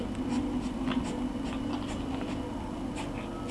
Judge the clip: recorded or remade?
recorded